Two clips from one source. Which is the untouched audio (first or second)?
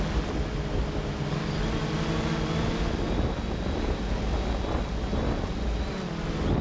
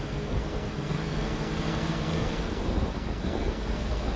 first